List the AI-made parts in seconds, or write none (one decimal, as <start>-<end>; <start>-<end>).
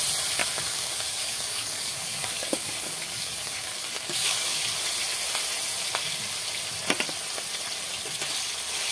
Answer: 0.4-4.6